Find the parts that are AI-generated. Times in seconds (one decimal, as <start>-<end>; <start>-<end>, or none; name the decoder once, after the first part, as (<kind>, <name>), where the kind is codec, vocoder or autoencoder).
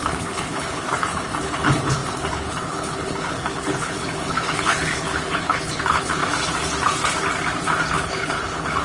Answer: 0.0-6.2 (codec, HILCodec); 7.9-8.8